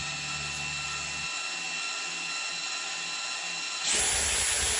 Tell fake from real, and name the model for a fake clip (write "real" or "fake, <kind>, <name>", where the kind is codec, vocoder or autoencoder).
real